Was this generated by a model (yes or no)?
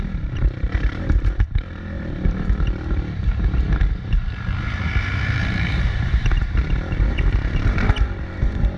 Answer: yes